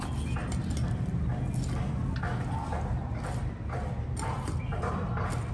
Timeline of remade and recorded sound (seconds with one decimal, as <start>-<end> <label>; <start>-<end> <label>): 0.0-5.5 recorded